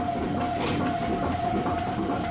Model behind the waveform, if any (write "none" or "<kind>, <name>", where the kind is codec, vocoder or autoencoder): none